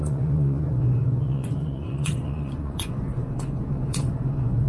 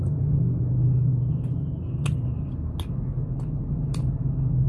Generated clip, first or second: first